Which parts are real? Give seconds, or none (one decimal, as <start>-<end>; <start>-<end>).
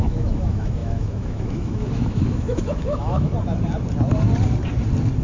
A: 3.3-5.2